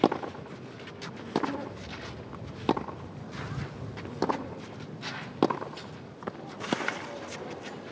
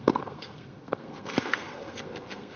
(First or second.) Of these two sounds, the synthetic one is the second